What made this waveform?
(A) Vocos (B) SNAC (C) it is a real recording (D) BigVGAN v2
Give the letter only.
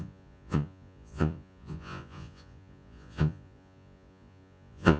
A